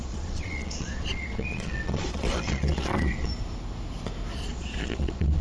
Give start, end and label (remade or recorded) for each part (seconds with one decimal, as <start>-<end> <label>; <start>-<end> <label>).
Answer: 0.0-3.3 remade; 3.3-4.5 recorded; 4.5-5.4 remade